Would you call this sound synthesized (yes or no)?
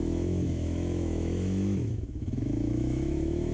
yes